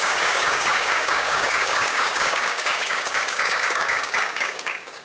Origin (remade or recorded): remade